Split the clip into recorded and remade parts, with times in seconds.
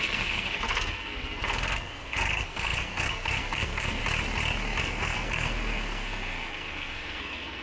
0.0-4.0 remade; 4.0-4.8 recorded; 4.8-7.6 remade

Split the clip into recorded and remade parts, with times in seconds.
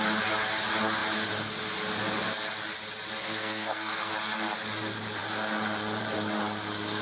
0.0-3.2 recorded; 3.2-4.1 remade; 4.1-7.0 recorded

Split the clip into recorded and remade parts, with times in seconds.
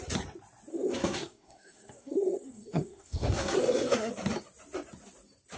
0.0-0.7 recorded; 0.7-4.1 remade; 4.1-5.6 recorded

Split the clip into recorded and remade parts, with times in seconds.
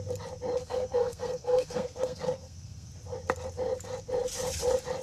0.0-0.6 recorded; 0.6-2.9 remade; 2.9-5.0 recorded